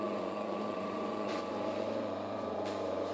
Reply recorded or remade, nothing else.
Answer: remade